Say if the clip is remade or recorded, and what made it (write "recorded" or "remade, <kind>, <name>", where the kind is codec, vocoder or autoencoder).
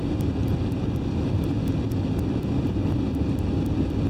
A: recorded